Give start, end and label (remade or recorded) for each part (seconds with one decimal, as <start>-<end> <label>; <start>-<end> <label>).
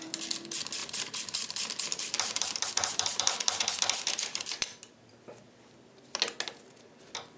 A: 0.0-0.8 recorded; 0.8-5.1 remade; 5.1-7.4 recorded